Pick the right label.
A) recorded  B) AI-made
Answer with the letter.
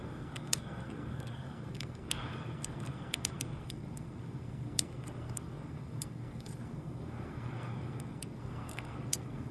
B